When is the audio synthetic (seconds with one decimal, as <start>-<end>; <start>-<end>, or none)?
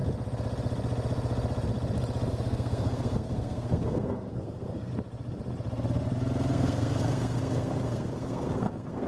2.3-4.9; 6.5-9.1